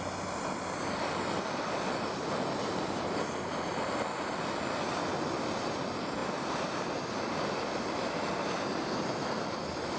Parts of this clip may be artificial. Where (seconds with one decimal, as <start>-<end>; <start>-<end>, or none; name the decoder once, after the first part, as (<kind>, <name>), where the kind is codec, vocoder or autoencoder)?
none